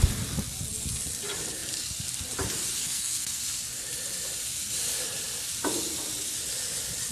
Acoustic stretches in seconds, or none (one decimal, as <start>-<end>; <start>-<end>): 0.0-2.8; 3.4-7.1